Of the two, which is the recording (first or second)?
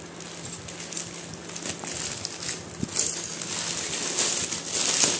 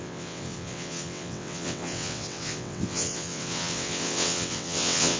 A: first